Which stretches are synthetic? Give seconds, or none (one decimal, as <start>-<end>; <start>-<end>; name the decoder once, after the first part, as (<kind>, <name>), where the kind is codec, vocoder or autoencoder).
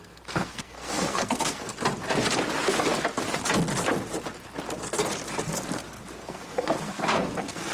0.0-1.7 (codec, SNAC); 6.2-7.7